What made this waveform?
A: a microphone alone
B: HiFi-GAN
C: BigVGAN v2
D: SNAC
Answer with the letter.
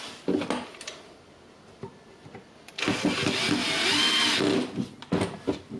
A